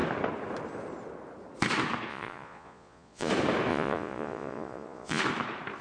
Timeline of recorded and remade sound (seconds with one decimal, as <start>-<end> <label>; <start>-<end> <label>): 0.0-2.1 recorded; 2.1-3.3 remade; 3.3-3.7 recorded; 3.7-5.2 remade; 5.2-5.8 recorded